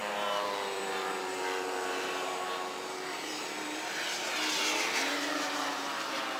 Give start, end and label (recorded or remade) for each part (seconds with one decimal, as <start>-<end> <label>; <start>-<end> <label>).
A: 0.0-6.4 remade